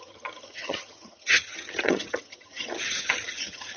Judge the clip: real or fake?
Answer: fake